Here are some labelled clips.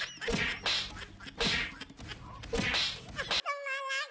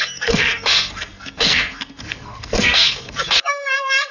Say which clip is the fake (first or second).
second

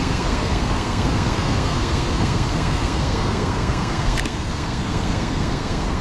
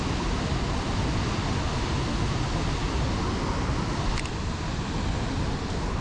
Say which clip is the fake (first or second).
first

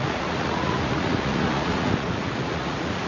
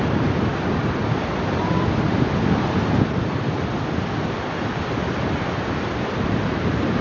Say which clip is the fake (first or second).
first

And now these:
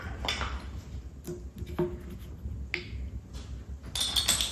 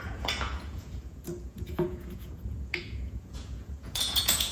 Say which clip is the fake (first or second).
second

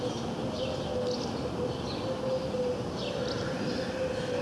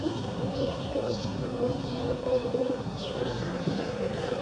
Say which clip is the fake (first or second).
second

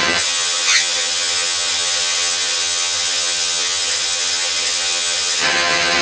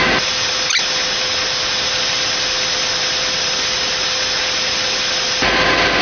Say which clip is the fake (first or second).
first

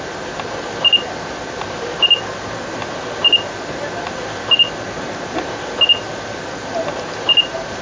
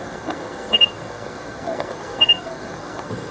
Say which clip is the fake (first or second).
second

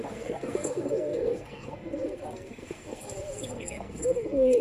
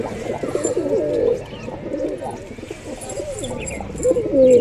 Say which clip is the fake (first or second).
first